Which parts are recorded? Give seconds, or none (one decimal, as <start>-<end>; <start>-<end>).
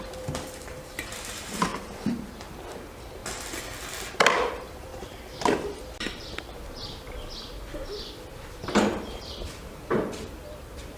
3.2-4.5; 4.9-8.7